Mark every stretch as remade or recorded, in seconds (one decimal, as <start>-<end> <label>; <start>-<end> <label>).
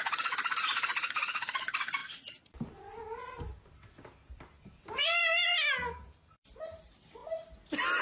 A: 0.0-8.0 recorded